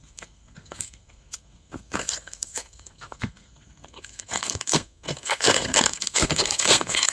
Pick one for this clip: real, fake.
fake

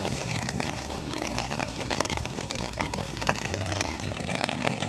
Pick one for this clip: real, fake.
fake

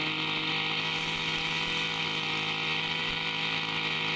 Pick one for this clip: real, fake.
real